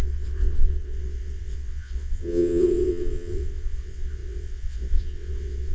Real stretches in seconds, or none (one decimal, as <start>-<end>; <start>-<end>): none